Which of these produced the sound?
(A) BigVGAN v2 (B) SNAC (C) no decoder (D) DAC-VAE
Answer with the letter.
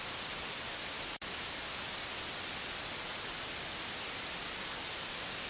C